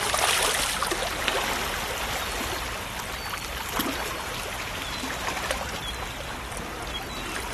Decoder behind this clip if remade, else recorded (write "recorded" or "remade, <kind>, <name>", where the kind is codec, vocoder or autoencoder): recorded